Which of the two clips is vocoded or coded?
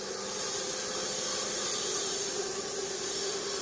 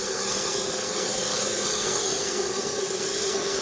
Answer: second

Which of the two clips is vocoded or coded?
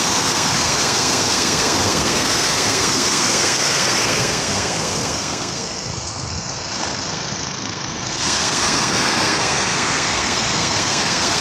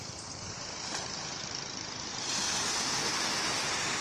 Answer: first